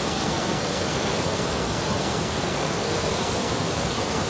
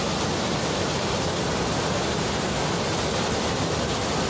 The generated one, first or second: first